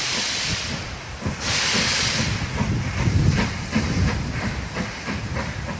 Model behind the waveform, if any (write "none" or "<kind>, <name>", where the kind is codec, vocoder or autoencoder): none